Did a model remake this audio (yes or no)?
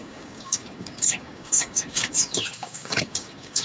yes